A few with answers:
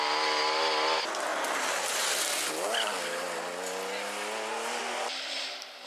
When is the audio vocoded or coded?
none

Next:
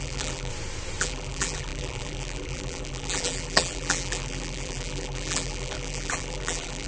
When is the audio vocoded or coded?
0.0-0.5; 1.0-6.9

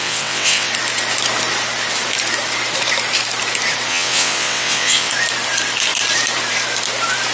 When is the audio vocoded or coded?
0.0-0.7; 3.9-5.1

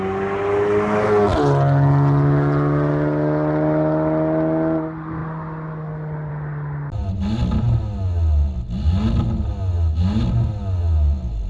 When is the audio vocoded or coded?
none

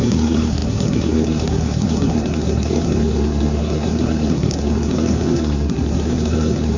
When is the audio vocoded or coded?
0.0-6.8

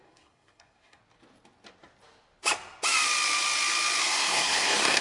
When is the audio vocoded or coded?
0.0-1.0; 4.0-5.0